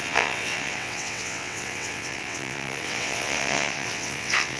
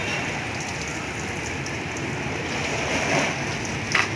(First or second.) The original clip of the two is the second